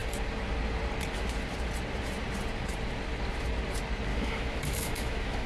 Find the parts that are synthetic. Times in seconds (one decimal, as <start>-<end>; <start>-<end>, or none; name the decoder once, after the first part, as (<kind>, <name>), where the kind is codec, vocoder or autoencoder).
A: 4.1-5.5 (autoencoder, DAC-VAE)